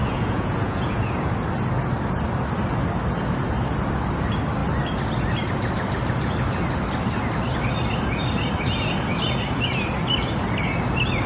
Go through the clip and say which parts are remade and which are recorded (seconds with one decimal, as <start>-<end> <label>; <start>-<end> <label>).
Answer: 0.0-1.3 remade; 1.3-11.3 recorded